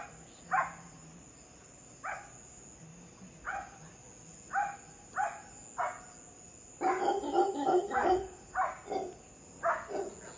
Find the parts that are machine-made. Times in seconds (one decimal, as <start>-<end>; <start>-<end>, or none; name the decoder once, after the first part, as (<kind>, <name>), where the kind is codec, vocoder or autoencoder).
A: none